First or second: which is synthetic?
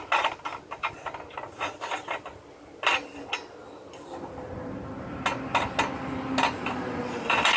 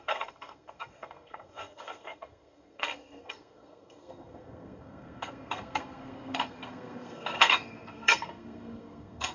second